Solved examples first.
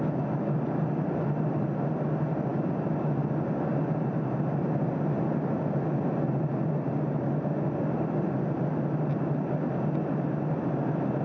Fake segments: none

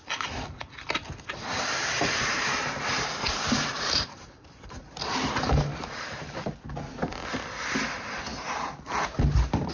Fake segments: 1.5-6.5 (vocoder, BigVGAN v2)

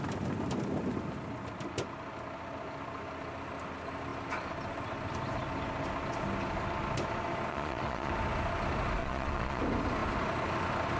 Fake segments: 7.5-8.1 (vocoder, Vocos); 9.0-9.6

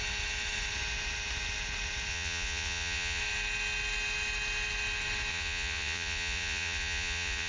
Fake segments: 2.1-3.2 (vocoder, Vocos); 5.3-7.5

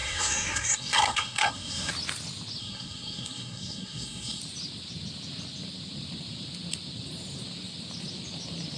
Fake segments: 0.0-1.9 (codec, SNAC); 2.6-4.4

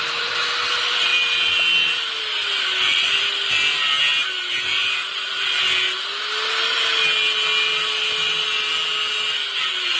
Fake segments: none